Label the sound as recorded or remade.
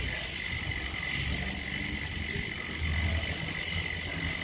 recorded